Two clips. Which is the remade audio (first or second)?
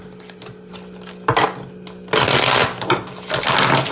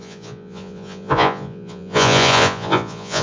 second